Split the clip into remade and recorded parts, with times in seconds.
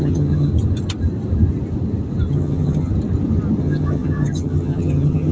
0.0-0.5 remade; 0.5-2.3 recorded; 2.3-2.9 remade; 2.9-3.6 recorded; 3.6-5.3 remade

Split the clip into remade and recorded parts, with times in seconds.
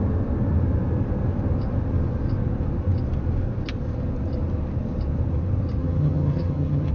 0.0-5.8 recorded; 5.8-6.9 remade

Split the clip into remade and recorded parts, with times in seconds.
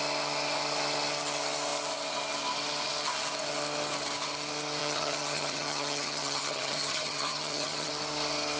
0.0-4.8 recorded; 4.8-7.9 remade; 7.9-8.6 recorded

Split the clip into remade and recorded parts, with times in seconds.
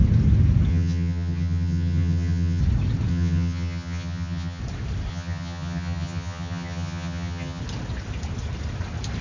0.0-0.7 recorded; 0.7-2.6 remade; 2.6-3.1 recorded; 3.1-4.6 remade; 4.6-5.1 recorded; 5.1-7.6 remade; 7.6-9.2 recorded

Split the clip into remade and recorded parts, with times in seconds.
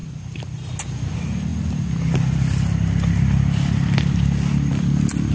0.0-5.3 recorded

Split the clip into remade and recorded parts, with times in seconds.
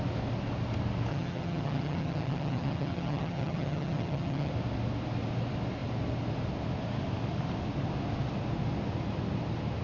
0.0-1.1 recorded; 1.1-4.5 remade; 4.5-9.8 recorded